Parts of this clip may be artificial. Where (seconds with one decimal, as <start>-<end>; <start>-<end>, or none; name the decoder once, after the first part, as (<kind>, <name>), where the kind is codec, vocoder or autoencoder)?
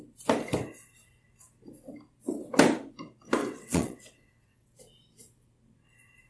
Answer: 3.4-4.8 (vocoder, WaveNeXt)